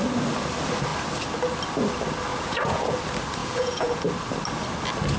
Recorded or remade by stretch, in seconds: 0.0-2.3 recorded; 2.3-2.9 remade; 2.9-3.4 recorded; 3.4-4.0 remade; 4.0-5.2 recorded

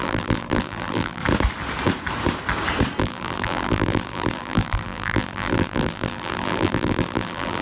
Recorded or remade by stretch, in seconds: 0.0-1.2 remade; 1.2-3.0 recorded; 3.0-7.6 remade

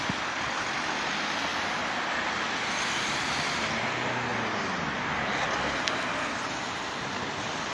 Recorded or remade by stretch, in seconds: 0.0-7.7 recorded